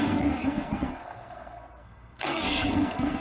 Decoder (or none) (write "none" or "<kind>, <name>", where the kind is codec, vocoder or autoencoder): codec, SNAC